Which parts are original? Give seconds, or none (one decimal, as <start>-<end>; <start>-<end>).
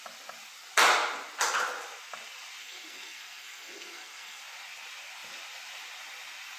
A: 0.0-2.6; 4.4-6.6